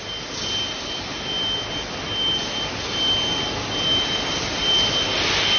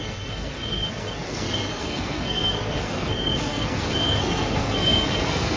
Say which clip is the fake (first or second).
second